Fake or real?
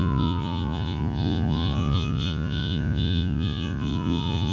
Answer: fake